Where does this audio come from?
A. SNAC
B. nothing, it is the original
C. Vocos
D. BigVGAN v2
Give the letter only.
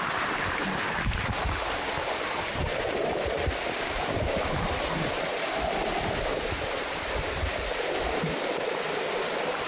B